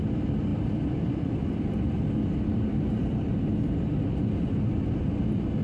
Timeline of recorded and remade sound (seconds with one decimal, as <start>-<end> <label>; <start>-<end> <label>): 0.0-0.5 recorded; 0.5-3.1 remade; 3.1-5.6 recorded